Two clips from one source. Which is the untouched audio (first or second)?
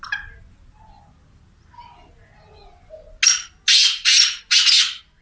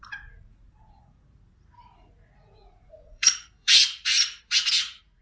first